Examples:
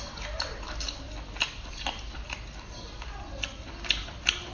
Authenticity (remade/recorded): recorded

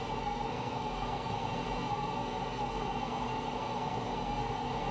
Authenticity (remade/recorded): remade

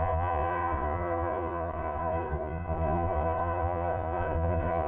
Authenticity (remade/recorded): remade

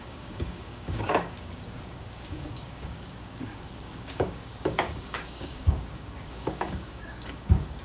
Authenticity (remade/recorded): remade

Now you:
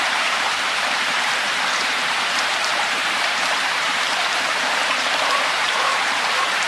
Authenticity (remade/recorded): remade